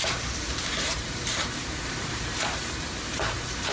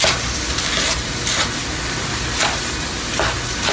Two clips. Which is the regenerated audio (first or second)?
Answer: first